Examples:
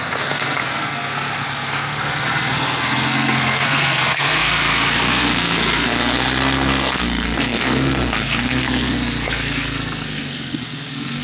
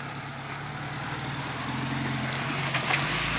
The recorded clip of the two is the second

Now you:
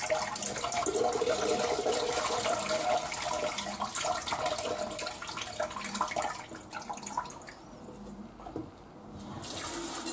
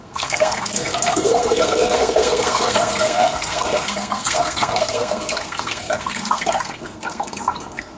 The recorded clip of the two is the first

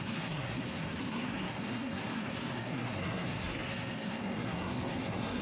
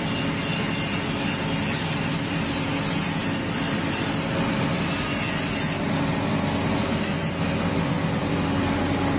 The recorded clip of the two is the second